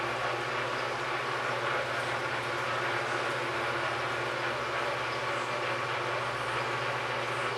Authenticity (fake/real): real